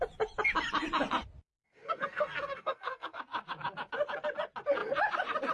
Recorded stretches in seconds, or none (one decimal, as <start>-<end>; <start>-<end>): 0.0-1.6; 3.2-5.5